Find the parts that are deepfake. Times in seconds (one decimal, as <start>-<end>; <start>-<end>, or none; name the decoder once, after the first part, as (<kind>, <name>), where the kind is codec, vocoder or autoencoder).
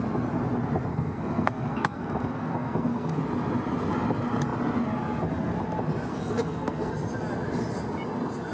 0.9-3.2 (codec, SNAC); 6.1-6.9